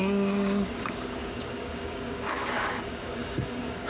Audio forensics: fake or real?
fake